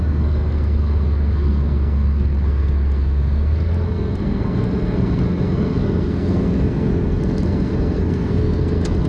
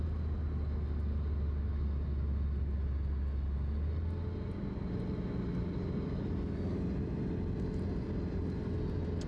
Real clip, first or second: second